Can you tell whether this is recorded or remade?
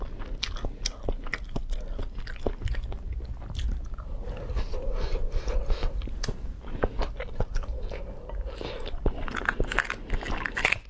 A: recorded